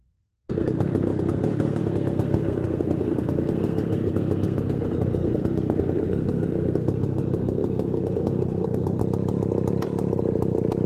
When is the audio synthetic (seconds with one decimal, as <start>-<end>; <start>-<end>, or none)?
0.0-9.0

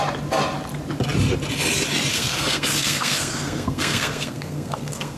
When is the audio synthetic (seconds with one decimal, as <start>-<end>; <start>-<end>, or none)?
2.1-5.2

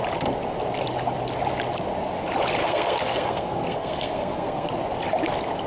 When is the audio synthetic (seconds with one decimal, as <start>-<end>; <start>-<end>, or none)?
2.6-4.7

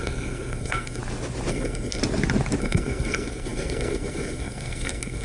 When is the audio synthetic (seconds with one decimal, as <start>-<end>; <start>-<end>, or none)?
0.0-1.0; 1.5-2.0; 2.6-5.2